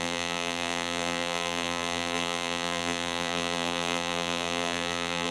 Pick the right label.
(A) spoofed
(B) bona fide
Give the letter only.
A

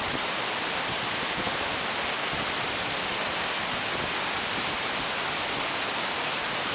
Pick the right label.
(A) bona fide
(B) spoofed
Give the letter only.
B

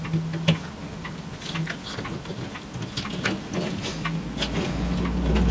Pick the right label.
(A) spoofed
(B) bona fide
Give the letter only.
B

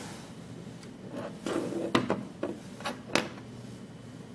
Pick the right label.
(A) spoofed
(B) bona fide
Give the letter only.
B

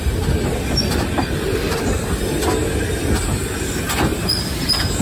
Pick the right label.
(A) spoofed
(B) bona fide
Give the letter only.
B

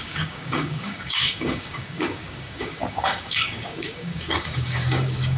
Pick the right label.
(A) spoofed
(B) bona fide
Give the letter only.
A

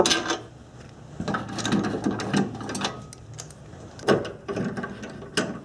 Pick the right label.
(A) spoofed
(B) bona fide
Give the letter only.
B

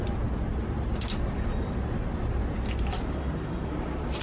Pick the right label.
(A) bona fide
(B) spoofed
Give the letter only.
A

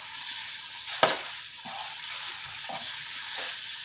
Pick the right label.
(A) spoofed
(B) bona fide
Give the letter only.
B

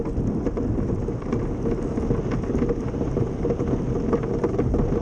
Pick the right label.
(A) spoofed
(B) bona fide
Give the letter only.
B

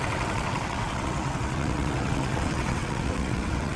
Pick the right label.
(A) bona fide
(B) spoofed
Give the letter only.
B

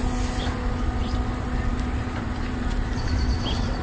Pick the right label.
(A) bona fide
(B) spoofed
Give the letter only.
A